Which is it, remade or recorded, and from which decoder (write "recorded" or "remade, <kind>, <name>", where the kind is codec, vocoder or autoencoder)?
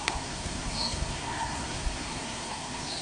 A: remade, codec, SNAC